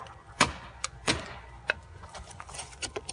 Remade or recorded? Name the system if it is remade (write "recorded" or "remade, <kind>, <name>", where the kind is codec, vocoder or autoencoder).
remade, vocoder, Vocos